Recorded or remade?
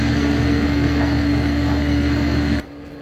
remade